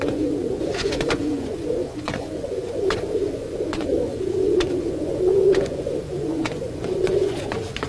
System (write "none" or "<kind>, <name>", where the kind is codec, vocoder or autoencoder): vocoder, Vocos